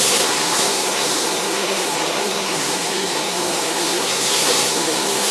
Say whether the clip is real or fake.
fake